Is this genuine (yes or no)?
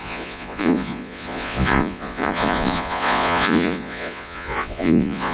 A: no